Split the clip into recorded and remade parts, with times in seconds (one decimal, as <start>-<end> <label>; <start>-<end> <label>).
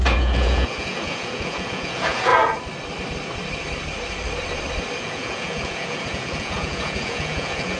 0.0-2.3 remade; 2.3-5.0 recorded; 5.0-7.8 remade